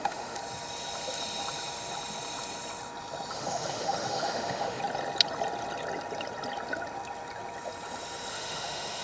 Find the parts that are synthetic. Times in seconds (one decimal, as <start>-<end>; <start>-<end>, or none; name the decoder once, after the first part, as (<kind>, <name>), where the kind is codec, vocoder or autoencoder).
0.0-0.4 (autoencoder, DAC-VAE); 3.3-4.8; 8.3-9.0

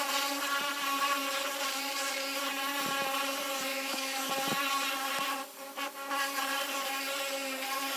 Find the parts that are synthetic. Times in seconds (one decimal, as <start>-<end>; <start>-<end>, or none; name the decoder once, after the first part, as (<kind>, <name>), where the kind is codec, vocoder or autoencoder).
3.7-4.3 (autoencoder, DAC-VAE)

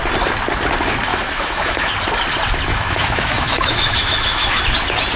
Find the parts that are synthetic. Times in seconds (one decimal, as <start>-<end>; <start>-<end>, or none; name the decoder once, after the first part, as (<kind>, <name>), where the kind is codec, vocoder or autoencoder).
1.1-1.9 (autoencoder, DAC-VAE); 2.7-4.6

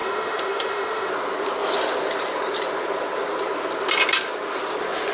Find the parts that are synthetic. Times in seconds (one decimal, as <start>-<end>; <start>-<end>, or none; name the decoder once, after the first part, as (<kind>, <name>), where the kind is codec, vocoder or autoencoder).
0.0-1.1 (autoencoder, DAC-VAE)

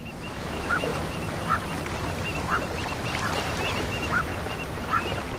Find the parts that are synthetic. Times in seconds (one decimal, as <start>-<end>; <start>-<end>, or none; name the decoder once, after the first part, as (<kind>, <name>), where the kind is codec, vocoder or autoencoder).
0.0-0.9 (autoencoder, DAC-VAE); 3.8-4.3